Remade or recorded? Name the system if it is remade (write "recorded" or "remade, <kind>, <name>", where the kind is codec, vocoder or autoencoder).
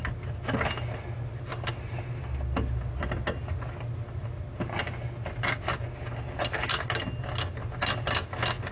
recorded